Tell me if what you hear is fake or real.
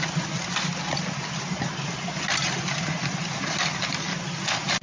real